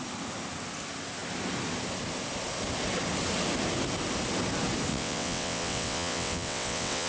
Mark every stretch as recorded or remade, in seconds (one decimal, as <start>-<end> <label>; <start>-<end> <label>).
0.0-4.9 recorded; 4.9-7.1 remade